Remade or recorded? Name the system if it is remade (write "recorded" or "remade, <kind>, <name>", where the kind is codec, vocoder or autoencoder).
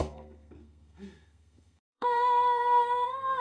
remade, codec, SNAC